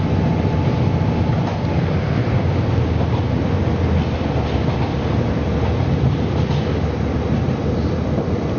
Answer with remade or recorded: recorded